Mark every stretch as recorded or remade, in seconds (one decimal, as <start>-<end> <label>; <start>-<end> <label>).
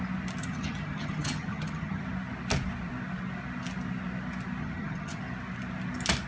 0.0-0.4 recorded; 0.4-2.0 remade; 2.0-4.6 recorded; 4.6-5.2 remade; 5.2-6.3 recorded